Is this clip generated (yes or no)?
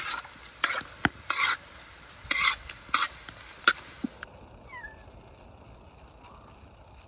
no